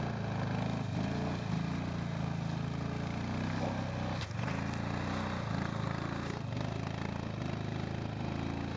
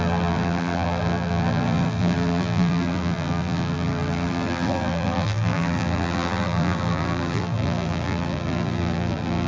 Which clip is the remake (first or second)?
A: second